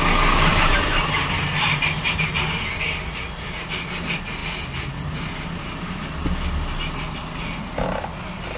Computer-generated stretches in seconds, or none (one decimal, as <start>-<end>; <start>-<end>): 0.5-1.3